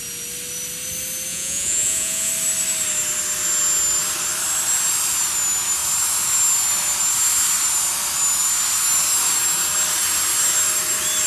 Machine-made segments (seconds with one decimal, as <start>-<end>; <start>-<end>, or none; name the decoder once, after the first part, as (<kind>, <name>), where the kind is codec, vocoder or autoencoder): 1.3-2.3 (vocoder, Vocos)